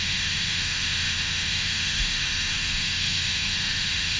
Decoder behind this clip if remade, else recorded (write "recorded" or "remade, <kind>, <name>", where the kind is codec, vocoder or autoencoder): remade, autoencoder, DAC-VAE